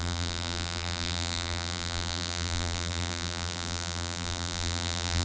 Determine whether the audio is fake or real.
fake